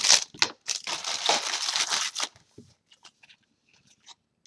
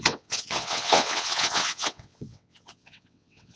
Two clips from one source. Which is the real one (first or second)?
first